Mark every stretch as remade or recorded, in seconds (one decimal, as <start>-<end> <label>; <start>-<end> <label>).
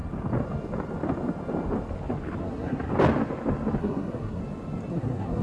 0.0-2.4 recorded; 2.4-2.9 remade; 2.9-3.8 recorded; 3.8-4.4 remade; 4.4-4.9 recorded; 4.9-5.4 remade